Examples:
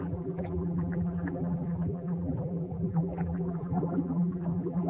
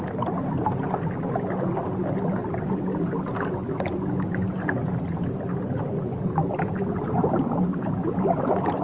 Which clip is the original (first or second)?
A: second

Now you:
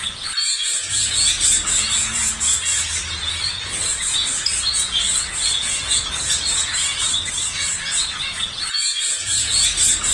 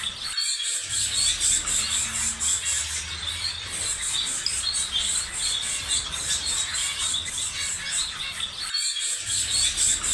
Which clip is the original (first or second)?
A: second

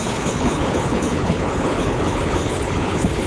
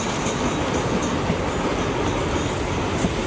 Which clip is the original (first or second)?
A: second